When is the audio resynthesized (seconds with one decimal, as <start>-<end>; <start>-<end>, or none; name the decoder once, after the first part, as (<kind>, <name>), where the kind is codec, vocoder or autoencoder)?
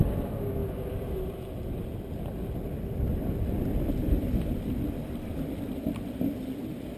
none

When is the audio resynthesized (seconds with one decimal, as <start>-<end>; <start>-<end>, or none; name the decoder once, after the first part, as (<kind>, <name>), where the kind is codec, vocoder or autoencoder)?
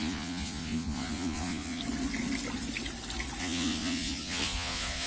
0.0-1.8 (vocoder, Vocos); 3.4-5.1